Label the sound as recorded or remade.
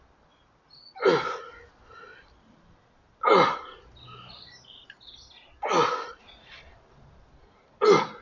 recorded